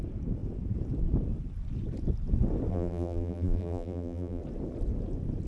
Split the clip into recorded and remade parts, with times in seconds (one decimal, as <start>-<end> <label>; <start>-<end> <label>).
0.0-2.7 recorded; 2.7-4.4 remade; 4.4-5.5 recorded